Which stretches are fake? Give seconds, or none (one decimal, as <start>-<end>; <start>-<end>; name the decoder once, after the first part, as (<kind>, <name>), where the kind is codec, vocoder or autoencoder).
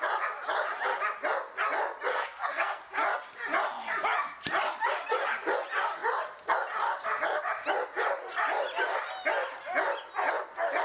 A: 2.1-2.8 (codec, SNAC)